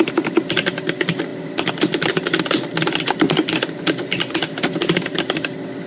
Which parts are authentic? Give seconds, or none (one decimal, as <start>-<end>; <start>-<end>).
0.0-5.9